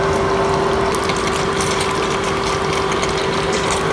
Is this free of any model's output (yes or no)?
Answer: yes